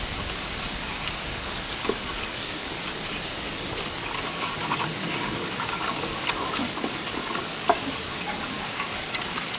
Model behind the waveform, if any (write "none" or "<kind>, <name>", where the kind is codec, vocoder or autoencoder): codec, DAC